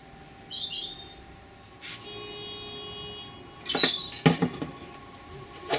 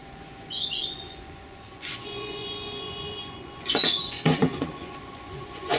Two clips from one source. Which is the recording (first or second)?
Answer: first